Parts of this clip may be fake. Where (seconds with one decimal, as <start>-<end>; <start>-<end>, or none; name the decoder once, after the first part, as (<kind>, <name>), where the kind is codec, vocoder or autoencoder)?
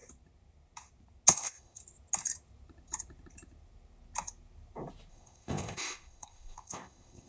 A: 1.3-1.8 (codec, ZipCodec); 5.1-7.3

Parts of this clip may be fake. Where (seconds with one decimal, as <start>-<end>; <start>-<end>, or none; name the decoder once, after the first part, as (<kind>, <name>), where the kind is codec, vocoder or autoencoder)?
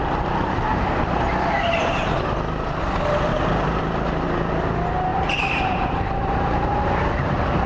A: 0.7-1.3 (vocoder, BigVGAN v2); 3.3-3.8; 5.1-6.3